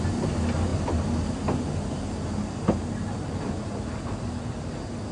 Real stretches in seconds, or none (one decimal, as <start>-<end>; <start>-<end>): 0.0-5.1